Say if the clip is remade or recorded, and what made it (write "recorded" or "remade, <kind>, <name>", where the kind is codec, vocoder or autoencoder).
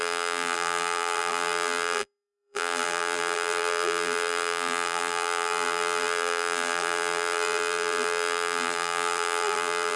remade, vocoder, BigVGAN v2